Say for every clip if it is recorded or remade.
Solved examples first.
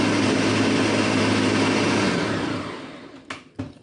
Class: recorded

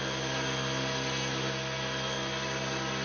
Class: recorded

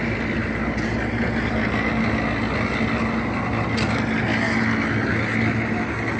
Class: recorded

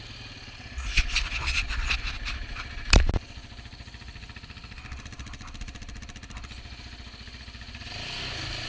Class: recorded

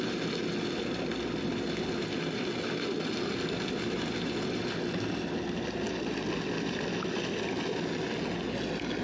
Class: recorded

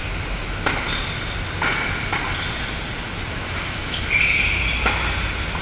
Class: recorded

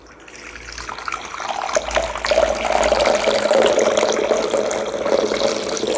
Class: recorded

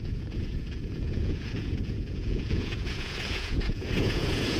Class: remade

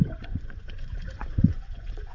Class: remade